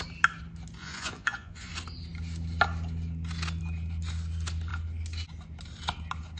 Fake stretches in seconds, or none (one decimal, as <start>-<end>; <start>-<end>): 0.8-1.7